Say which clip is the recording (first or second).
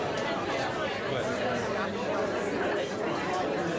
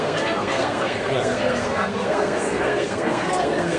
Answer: first